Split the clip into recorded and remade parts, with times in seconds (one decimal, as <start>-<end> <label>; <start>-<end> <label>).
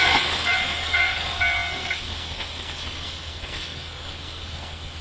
0.0-5.0 remade